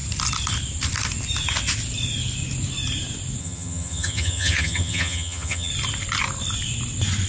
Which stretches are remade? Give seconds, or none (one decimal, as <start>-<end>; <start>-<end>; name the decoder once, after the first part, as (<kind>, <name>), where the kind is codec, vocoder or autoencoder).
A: 3.4-5.7 (vocoder, HiFi-GAN)